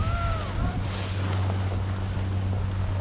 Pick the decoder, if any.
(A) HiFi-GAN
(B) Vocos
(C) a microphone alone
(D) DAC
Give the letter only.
C